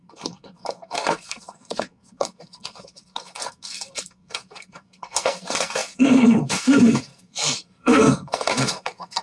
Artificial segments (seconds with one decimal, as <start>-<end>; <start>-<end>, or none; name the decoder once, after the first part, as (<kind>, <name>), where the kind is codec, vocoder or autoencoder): 0.0-9.2 (codec, SNAC)